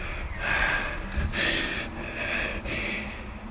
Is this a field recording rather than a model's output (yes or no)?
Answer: yes